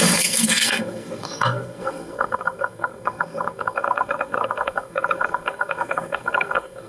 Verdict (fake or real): fake